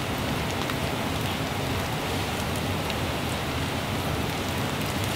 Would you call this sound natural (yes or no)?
yes